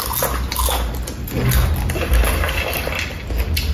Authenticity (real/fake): real